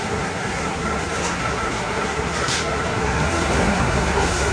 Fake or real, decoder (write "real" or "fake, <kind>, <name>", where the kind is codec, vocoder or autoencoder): fake, codec, SNAC